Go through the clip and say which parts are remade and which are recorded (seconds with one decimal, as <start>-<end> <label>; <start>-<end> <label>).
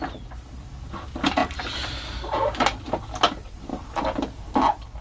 0.0-5.0 recorded